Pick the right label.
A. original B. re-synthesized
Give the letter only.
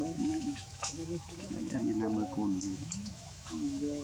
B